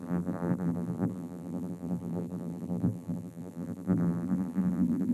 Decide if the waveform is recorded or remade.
remade